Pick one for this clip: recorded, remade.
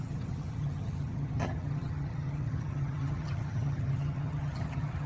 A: remade